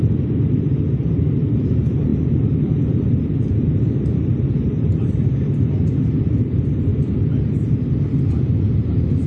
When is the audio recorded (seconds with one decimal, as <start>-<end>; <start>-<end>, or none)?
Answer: 6.9-8.2